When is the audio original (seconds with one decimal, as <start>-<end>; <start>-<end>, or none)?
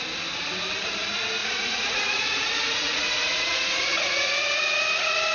0.0-1.4; 4.3-5.3